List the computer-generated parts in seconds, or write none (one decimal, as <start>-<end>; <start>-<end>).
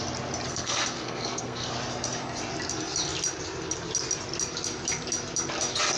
0.5-1.7